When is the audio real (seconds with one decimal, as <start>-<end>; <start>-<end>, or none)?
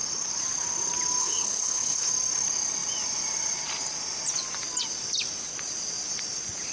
0.0-1.2; 2.1-6.7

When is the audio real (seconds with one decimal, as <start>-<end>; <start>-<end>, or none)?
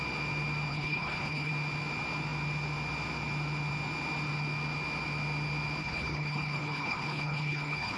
0.0-0.7; 1.5-5.8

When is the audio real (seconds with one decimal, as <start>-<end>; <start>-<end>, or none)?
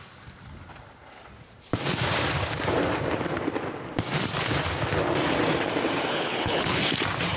0.0-6.1; 6.8-7.4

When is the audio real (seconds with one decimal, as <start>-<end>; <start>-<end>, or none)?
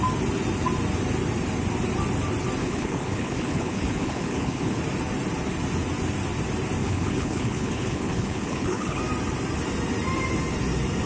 0.0-2.6; 4.8-6.8; 9.0-11.1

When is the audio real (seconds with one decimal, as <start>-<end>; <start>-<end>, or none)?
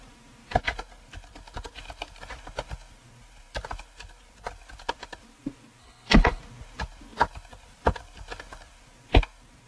0.0-5.8; 6.4-9.7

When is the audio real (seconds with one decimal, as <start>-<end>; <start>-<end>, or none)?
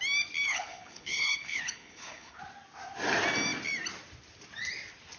0.0-0.5; 2.4-5.2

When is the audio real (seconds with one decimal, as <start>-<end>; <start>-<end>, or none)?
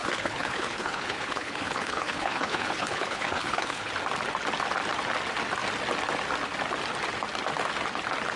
3.9-8.4